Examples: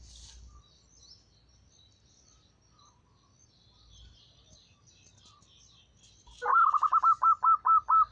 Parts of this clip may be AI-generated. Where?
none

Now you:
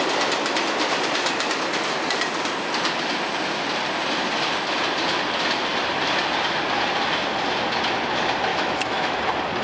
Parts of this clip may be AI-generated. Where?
8.5-9.2 (autoencoder, DAC-VAE)

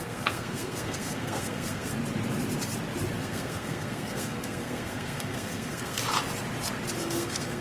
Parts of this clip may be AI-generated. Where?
0.0-1.9 (codec, SNAC); 3.2-6.0; 7.0-7.6

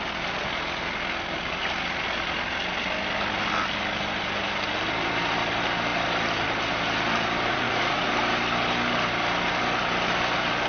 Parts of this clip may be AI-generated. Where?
7.5-8.1 (vocoder, Vocos)

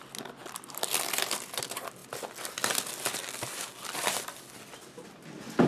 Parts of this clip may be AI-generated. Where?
none

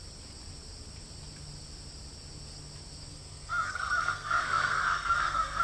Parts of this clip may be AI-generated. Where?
3.1-5.6 (codec, SNAC)